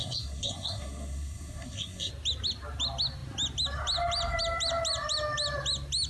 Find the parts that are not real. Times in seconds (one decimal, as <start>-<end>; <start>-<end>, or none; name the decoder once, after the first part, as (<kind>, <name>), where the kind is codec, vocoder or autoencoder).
0.0-2.1 (codec, SNAC)

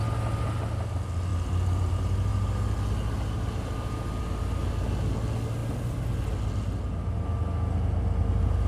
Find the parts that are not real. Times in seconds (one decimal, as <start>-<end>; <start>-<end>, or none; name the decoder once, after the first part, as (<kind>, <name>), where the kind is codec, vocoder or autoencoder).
none